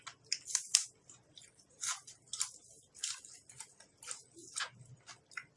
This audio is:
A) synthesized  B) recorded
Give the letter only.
B